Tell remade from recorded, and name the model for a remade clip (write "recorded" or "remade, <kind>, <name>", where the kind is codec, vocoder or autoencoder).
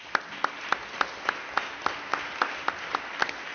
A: recorded